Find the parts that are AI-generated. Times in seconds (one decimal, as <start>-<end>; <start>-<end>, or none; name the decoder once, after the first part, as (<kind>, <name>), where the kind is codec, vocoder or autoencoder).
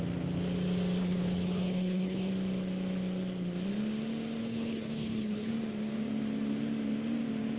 1.0-2.3 (codec, HILCodec); 4.4-5.5